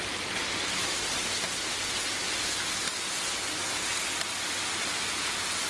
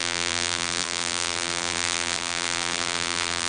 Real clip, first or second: first